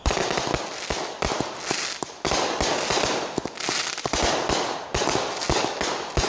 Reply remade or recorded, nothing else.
recorded